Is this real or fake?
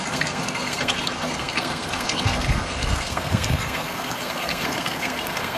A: fake